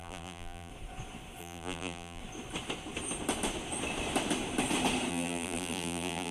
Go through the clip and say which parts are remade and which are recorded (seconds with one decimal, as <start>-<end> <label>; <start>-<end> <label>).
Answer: 0.0-0.7 remade; 0.7-1.4 recorded; 1.4-2.2 remade; 2.2-5.1 recorded; 5.1-6.3 remade